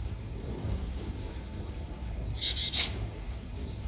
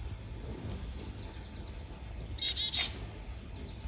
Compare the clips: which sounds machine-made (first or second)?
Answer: first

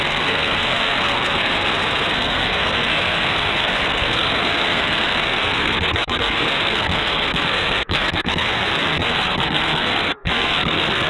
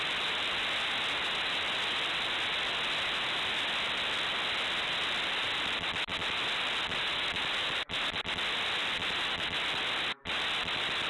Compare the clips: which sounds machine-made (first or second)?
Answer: first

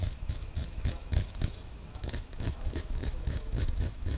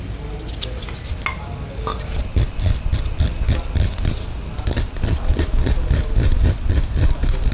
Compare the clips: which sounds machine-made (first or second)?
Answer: first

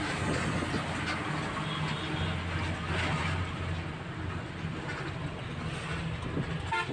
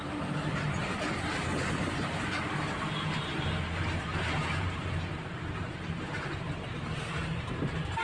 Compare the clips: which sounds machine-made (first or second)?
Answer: second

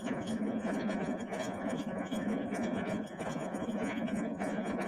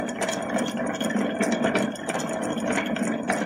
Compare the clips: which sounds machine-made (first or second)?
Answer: first